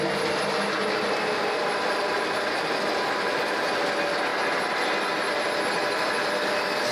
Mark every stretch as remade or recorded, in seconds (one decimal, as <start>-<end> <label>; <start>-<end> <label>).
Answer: 0.0-6.9 recorded